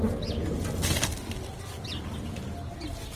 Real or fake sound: real